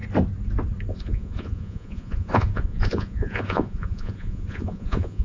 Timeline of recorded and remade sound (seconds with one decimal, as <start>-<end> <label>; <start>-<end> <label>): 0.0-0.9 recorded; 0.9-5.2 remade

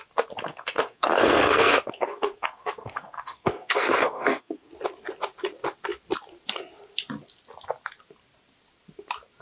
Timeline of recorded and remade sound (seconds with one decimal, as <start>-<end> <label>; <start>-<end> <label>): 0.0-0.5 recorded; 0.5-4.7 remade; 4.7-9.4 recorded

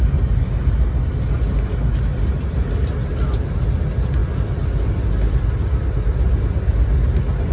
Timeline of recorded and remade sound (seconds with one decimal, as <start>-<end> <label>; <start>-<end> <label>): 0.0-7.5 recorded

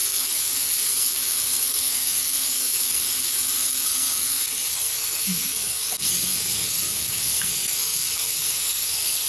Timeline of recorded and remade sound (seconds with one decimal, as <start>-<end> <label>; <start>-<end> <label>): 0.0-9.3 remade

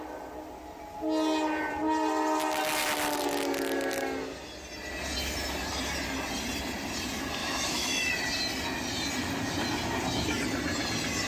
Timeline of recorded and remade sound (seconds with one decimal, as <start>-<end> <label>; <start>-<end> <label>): 0.0-7.4 recorded; 7.4-8.1 remade; 8.1-11.3 recorded

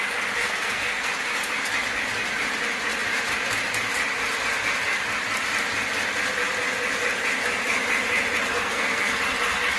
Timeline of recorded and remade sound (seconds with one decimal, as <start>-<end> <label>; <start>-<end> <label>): 0.0-0.4 recorded; 0.4-1.1 remade; 1.1-8.5 recorded; 8.5-9.2 remade; 9.2-9.8 recorded

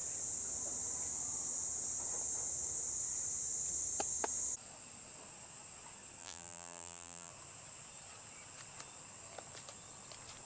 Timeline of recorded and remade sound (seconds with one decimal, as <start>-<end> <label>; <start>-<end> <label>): 0.0-6.2 recorded; 6.2-7.3 remade; 7.3-10.5 recorded